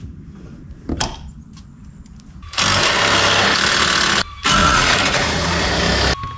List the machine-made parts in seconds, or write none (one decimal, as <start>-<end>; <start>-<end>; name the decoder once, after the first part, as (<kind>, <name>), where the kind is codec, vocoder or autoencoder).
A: 4.6-5.8 (vocoder, Vocos)